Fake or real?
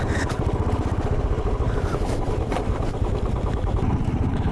fake